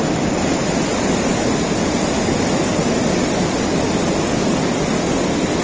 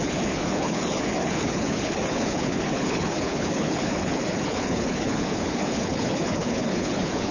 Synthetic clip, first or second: second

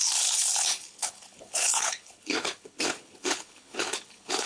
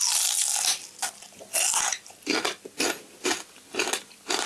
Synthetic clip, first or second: first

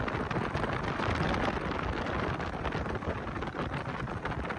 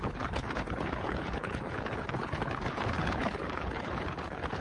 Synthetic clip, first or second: second